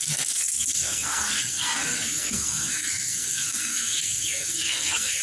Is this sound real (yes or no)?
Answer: no